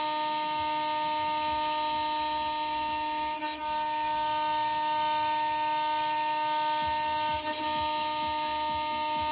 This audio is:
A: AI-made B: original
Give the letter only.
B